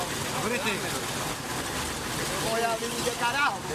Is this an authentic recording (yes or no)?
yes